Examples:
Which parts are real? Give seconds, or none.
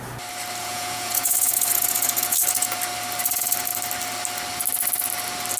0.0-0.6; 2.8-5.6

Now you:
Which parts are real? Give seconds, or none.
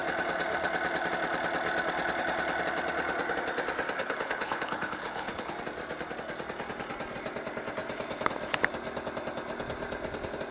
0.0-4.0; 5.5-10.5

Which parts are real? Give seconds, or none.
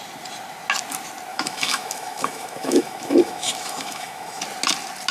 0.0-1.3; 4.4-5.1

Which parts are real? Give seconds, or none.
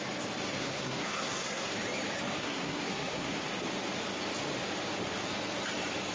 0.0-0.6; 1.7-2.4; 3.5-6.1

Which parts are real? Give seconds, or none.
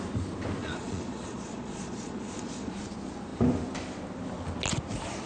0.0-0.6; 2.7-5.3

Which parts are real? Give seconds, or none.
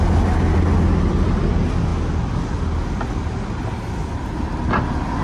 0.0-5.2